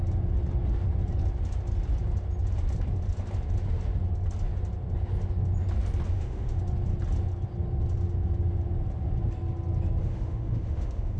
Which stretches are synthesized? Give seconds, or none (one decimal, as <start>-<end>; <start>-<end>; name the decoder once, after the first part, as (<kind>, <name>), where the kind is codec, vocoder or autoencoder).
6.1-6.6 (autoencoder, DAC-VAE); 10.0-11.2